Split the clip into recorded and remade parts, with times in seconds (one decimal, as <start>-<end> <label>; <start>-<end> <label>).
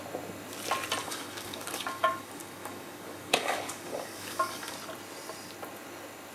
0.0-1.0 recorded; 1.0-4.7 remade; 4.7-6.3 recorded